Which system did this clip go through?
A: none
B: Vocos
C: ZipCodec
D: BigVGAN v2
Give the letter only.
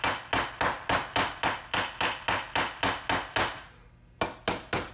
A